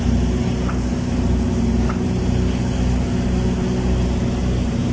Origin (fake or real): real